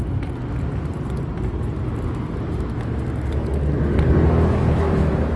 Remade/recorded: recorded